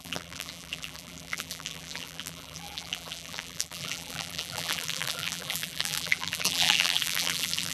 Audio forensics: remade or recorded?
remade